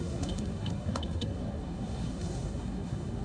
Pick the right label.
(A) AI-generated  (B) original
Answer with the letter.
A